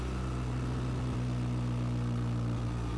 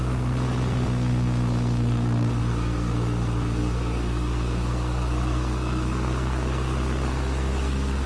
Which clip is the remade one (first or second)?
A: second